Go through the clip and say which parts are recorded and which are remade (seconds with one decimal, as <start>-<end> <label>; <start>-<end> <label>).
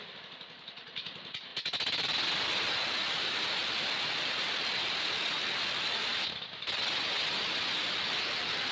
0.0-1.5 recorded; 1.5-4.9 remade; 4.9-6.1 recorded; 6.1-6.8 remade; 6.8-8.7 recorded